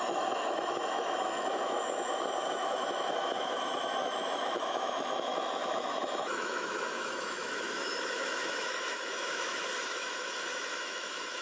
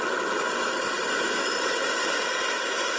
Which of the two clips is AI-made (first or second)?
first